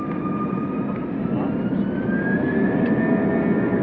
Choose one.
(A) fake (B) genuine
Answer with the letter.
B